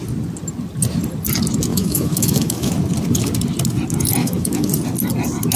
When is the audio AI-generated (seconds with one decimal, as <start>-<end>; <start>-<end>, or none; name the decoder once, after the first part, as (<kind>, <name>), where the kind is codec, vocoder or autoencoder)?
1.7-2.7 (autoencoder, DAC-VAE); 4.2-4.7